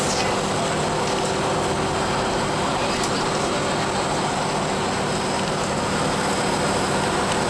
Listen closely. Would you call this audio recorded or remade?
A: recorded